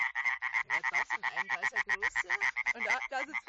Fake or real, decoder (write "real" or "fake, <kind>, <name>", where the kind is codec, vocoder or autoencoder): real